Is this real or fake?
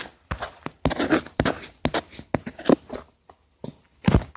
real